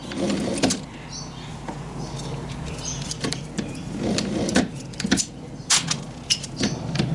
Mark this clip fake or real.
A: fake